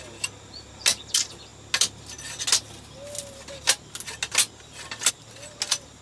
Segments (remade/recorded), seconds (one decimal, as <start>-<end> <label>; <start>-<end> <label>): 0.0-6.0 recorded